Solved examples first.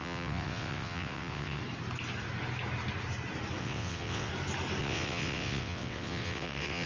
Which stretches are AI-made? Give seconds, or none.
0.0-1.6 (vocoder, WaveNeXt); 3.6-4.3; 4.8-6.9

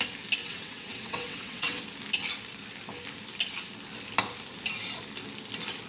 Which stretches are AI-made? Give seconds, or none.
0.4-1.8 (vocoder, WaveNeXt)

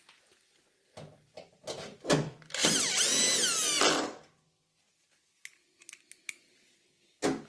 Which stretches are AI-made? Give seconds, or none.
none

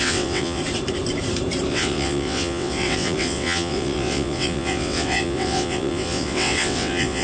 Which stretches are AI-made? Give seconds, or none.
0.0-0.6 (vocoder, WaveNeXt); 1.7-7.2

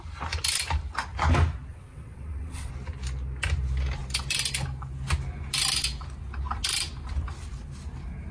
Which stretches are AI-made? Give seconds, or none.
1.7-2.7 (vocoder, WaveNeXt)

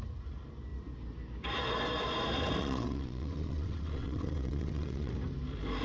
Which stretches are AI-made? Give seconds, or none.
2.6-5.1 (vocoder, WaveNeXt)

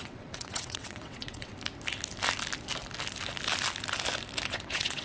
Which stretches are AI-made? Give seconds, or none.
0.0-1.5 (vocoder, WaveNeXt); 4.5-5.0

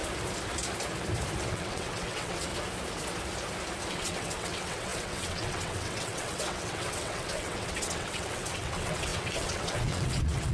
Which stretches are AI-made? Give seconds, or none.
1.5-2.5 (vocoder, WaveNeXt); 3.9-10.5